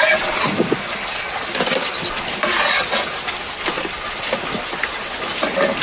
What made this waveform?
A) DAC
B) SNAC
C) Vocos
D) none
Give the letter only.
D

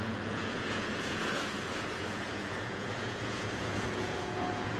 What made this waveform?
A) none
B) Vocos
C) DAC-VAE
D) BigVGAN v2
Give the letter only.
B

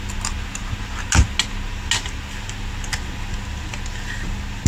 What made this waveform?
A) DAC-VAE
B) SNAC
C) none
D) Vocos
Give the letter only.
C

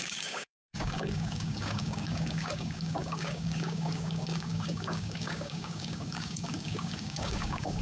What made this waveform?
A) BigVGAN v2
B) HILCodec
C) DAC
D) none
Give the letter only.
C